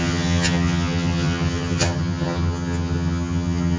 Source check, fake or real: fake